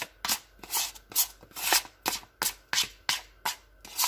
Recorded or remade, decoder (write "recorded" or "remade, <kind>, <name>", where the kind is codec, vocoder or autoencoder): recorded